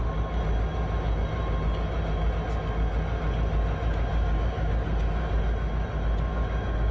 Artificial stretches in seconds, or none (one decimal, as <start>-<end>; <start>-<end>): 4.1-5.3; 6.3-6.9